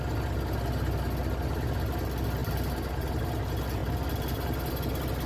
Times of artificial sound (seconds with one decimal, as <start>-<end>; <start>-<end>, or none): none